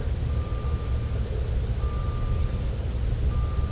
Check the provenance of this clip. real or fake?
real